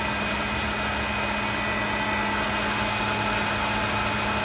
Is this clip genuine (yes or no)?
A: yes